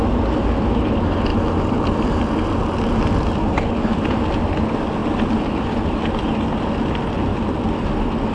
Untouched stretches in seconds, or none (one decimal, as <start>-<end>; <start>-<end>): 0.0-5.0; 6.5-7.3; 7.8-8.3